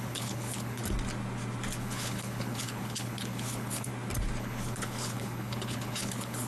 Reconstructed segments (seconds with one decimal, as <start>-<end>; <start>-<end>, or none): 0.0-0.8; 1.8-3.9; 4.4-6.5